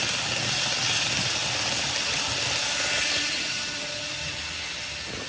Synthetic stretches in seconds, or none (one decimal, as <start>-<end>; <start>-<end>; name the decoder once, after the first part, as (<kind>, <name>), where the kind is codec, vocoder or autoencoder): none